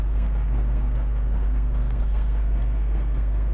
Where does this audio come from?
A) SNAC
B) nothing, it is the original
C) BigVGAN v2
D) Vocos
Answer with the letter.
A